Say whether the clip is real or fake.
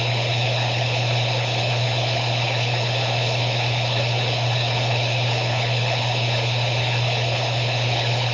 fake